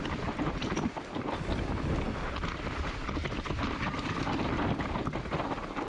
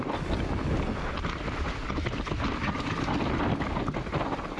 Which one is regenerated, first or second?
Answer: first